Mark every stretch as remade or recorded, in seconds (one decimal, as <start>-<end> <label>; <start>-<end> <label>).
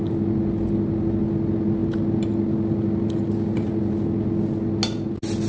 0.0-5.5 recorded